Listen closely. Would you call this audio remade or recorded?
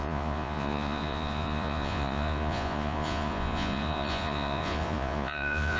remade